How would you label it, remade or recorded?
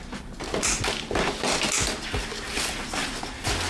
recorded